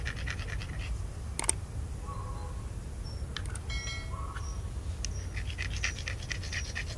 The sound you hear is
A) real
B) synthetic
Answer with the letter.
A